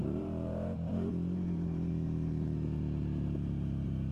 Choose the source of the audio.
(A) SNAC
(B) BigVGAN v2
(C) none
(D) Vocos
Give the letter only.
B